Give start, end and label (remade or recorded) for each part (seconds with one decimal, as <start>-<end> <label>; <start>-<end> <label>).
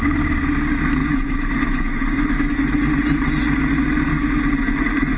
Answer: 0.0-1.0 recorded; 1.0-2.8 remade; 2.8-5.2 recorded